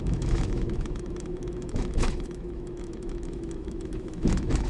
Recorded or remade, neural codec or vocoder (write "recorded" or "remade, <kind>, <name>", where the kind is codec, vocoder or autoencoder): remade, autoencoder, DAC-VAE